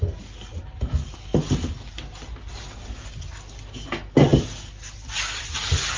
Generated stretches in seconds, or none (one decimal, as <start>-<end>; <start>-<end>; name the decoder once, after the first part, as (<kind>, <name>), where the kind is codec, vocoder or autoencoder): none